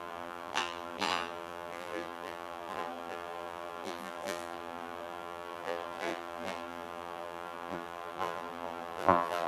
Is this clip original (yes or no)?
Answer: no